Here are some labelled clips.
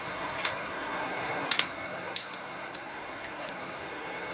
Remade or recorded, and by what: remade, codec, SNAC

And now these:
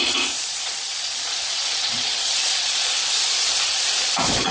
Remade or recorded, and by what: remade, vocoder, Vocos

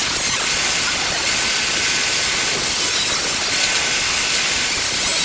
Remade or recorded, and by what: recorded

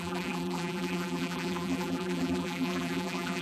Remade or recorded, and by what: remade, vocoder, BigVGAN v2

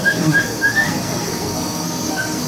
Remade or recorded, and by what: remade, codec, SNAC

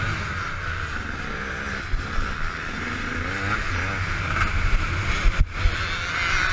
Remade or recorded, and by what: recorded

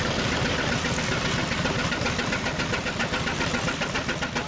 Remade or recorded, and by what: recorded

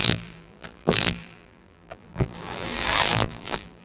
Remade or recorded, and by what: remade, vocoder, BigVGAN v2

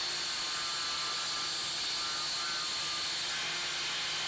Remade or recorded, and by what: recorded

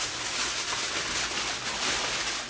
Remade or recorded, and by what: recorded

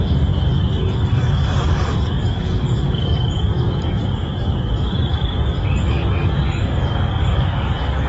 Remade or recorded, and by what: remade, codec, DAC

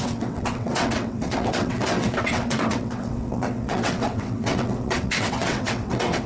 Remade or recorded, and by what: remade, vocoder, WaveNeXt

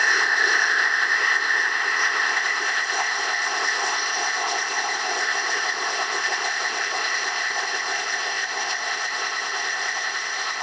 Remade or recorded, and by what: remade, codec, ZipCodec